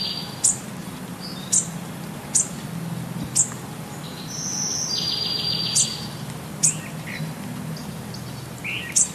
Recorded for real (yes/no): yes